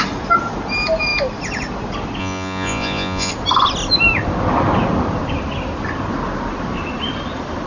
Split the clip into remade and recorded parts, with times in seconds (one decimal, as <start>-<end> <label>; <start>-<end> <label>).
0.0-2.2 recorded; 2.2-3.3 remade; 3.3-7.7 recorded